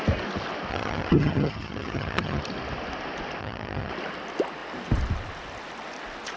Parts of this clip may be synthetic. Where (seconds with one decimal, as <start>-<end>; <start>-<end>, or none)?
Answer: 0.7-2.4; 3.4-3.9